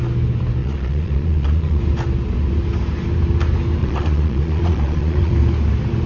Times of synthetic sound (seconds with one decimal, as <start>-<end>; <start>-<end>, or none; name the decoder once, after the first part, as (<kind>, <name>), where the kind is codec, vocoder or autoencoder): 0.6-1.8 (vocoder, Vocos); 3.8-5.3